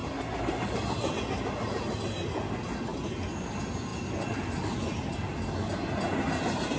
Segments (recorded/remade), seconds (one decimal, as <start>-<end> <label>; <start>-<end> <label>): 0.0-6.8 recorded